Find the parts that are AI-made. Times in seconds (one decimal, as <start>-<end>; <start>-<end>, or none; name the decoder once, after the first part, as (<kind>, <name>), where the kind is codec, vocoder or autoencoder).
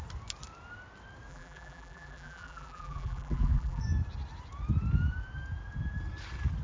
1.3-3.8 (vocoder, BigVGAN v2)